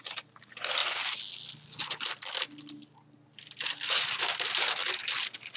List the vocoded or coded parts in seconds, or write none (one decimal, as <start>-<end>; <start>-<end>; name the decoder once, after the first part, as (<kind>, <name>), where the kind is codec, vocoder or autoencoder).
none